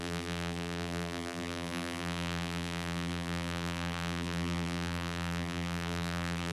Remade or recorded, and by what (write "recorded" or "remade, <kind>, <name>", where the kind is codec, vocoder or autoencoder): remade, vocoder, BigVGAN v2